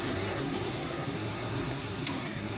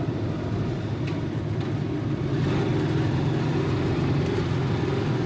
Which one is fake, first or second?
first